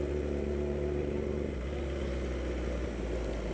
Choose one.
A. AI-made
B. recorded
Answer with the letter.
B